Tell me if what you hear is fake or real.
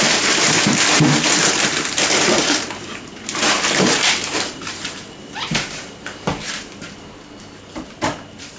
fake